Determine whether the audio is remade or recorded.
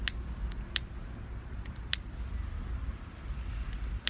recorded